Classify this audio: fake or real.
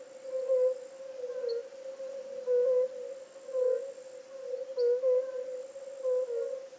real